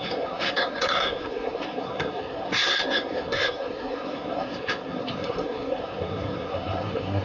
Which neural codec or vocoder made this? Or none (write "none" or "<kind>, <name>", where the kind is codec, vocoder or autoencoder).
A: codec, SNAC